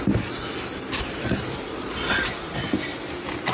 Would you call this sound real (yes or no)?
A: yes